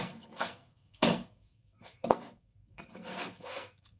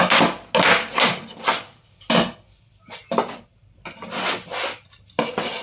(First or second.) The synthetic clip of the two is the first